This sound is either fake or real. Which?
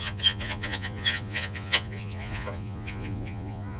fake